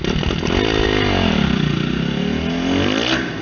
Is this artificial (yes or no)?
no